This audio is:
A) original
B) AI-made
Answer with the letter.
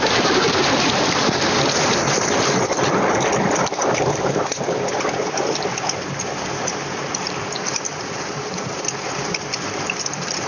B